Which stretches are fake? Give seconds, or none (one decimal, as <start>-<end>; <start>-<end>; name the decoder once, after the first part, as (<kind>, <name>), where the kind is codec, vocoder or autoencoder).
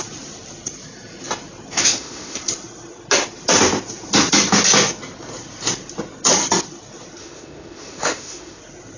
1.8-2.4 (autoencoder, DAC-VAE); 7.2-8.6